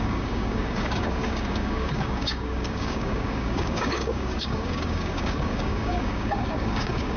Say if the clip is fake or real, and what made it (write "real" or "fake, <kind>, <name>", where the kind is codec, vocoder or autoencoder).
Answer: fake, codec, DAC